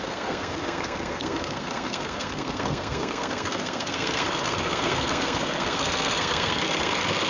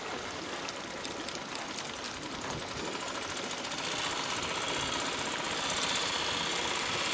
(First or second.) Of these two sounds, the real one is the second